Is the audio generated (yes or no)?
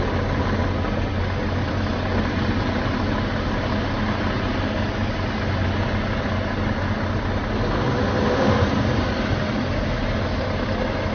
no